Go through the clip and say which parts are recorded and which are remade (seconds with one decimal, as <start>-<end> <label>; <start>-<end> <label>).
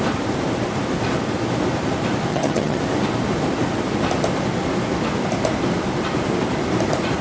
0.0-2.3 recorded; 2.3-2.8 remade; 2.8-7.2 recorded